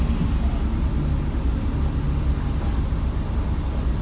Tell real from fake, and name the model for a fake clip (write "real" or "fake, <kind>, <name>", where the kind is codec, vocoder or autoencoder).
real